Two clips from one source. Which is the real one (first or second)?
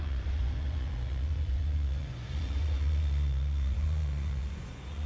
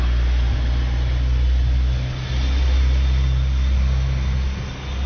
second